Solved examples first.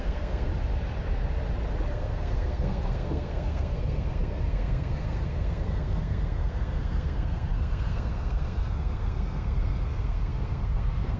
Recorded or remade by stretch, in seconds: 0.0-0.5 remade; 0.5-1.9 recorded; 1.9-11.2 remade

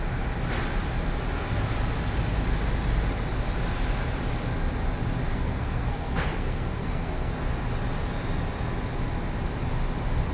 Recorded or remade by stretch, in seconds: 0.0-5.3 recorded; 5.3-7.3 remade; 7.3-10.3 recorded

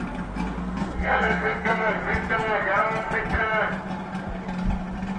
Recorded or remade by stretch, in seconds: 0.0-0.6 recorded; 0.6-1.9 remade; 1.9-5.2 recorded

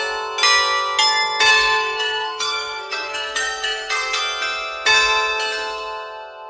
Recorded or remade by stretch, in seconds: 0.0-1.5 recorded; 1.5-4.2 remade; 4.2-6.5 recorded

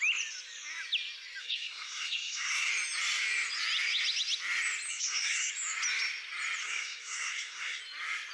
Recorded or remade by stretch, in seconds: 0.0-1.4 recorded; 1.4-2.7 remade; 2.7-4.9 recorded; 4.9-5.5 remade; 5.5-6.6 recorded; 6.6-7.8 remade; 7.8-8.3 recorded

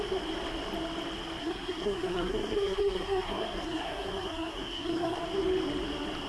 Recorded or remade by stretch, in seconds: 0.0-1.4 recorded; 1.4-5.2 remade; 5.2-6.3 recorded

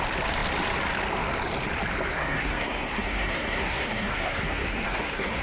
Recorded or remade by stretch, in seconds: 0.0-2.1 recorded; 2.1-5.4 remade

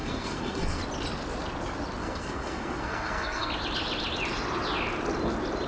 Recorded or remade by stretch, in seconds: 0.0-0.8 remade; 0.8-2.0 recorded; 2.0-3.5 remade; 3.5-5.7 recorded